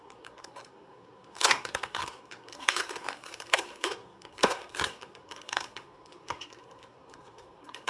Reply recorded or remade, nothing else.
remade